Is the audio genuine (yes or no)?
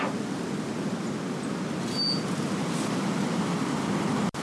yes